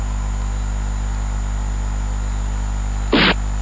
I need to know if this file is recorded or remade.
recorded